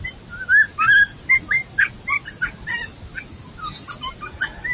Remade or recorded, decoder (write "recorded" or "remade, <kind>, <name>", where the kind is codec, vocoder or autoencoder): recorded